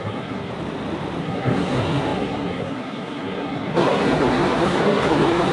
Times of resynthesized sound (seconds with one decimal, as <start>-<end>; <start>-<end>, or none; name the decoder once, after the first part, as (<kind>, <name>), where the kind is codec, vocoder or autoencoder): 0.0-0.5 (codec, SNAC); 1.2-5.5